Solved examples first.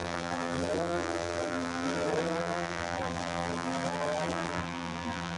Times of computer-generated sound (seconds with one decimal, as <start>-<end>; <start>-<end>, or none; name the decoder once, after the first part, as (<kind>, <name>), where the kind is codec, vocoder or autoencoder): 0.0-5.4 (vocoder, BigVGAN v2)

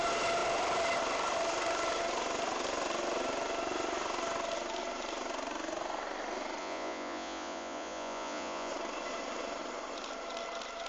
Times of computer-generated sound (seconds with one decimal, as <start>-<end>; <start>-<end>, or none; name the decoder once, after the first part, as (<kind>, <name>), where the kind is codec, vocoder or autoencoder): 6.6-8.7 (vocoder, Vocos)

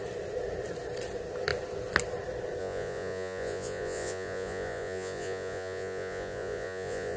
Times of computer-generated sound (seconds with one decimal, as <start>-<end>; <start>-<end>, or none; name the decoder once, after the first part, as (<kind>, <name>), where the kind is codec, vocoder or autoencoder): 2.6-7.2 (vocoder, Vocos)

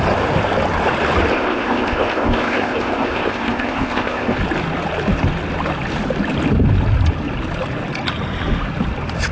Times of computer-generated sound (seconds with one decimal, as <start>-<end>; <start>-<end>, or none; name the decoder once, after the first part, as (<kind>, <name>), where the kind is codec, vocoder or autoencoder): 1.3-4.4 (codec, ZipCodec)

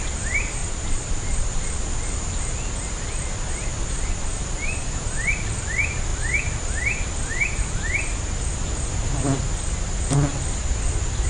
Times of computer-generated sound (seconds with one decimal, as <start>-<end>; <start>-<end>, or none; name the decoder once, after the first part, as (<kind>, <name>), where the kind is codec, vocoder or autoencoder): 0.6-1.6 (vocoder, BigVGAN v2)

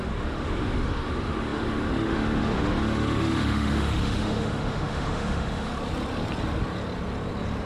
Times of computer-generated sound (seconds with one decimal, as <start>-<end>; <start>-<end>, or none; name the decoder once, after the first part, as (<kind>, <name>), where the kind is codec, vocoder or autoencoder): 0.0-5.7 (autoencoder, DAC-VAE)

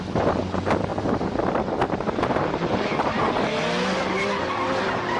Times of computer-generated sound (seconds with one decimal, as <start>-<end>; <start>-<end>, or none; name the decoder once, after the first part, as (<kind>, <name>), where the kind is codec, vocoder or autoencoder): none